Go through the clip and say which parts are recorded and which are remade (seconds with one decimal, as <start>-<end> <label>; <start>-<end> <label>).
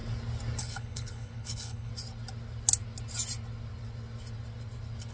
0.0-0.6 recorded; 0.6-1.9 remade; 1.9-5.1 recorded